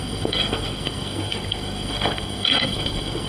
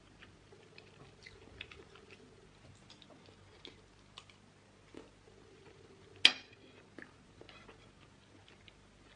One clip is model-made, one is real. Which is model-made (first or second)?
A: first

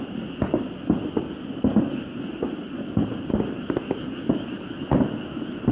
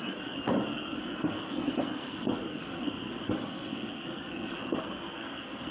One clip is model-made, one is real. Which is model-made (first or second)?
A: second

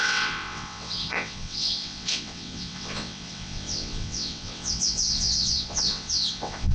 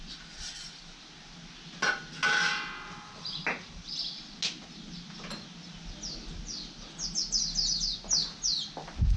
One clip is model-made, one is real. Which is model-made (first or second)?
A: first